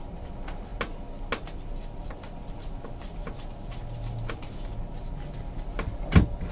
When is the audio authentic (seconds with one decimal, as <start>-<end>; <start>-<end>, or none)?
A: 0.0-6.5